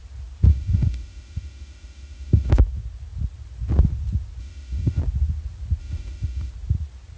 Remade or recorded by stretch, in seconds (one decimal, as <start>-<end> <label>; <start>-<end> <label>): 0.0-0.5 recorded; 0.5-2.5 remade; 2.5-4.4 recorded; 4.4-5.0 remade; 5.0-5.8 recorded; 5.8-6.5 remade; 6.5-7.2 recorded